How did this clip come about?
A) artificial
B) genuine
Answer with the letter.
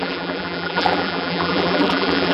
A